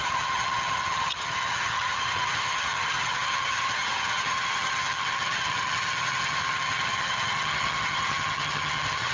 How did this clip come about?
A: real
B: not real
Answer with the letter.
B